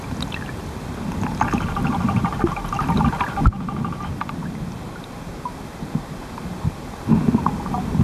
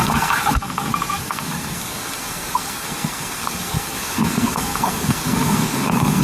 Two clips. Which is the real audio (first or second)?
first